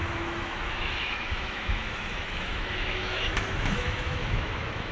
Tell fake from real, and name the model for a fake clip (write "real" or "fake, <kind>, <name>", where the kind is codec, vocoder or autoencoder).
fake, autoencoder, DAC-VAE